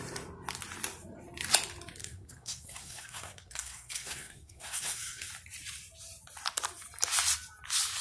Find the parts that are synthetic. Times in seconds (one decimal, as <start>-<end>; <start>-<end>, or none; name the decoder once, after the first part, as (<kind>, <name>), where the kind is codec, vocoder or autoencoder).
2.0-5.3 (codec, SNAC)